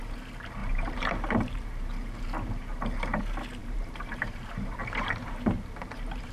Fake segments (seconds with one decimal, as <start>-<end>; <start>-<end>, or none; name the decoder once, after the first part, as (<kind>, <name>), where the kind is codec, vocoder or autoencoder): 0.6-3.2 (vocoder, BigVGAN v2); 3.6-6.3